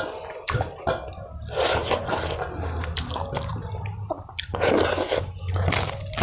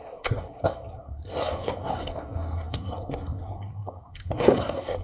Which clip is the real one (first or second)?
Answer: first